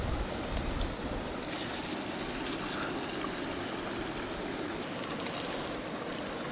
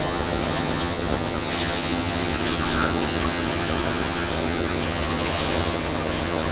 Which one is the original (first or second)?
first